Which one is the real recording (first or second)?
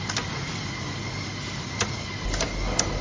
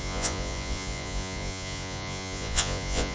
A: first